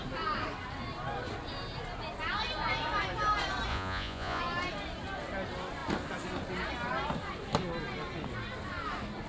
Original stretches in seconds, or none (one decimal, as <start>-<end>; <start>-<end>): 0.0-3.7; 4.4-9.3